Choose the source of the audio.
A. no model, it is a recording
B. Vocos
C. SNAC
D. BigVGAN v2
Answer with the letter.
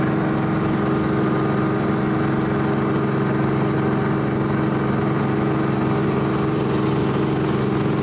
A